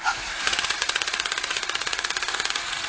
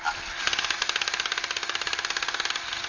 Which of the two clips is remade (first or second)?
first